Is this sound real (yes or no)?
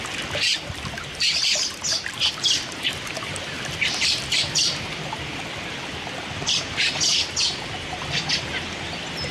no